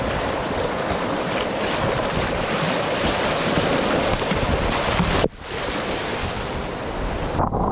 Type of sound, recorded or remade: recorded